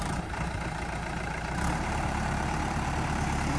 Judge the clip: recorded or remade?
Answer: remade